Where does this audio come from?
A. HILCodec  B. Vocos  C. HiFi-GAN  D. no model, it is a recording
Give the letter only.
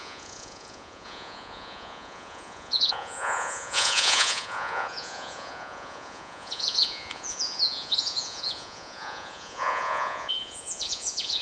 B